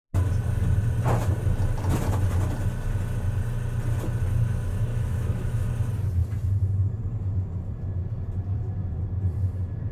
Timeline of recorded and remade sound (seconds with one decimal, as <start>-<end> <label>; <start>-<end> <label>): 0.0-4.9 recorded; 4.9-5.7 remade; 5.7-9.9 recorded